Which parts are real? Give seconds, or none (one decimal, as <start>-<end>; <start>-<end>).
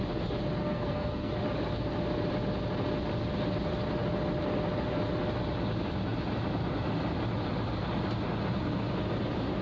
0.0-0.6; 1.3-9.6